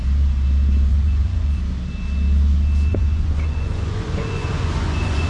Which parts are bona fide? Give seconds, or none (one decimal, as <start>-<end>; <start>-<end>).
0.0-0.9; 1.6-2.9